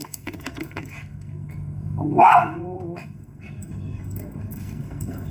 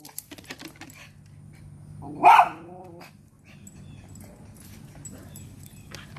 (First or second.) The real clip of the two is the second